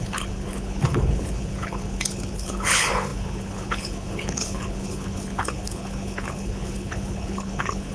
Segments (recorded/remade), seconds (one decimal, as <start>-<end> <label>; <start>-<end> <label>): 0.0-7.9 remade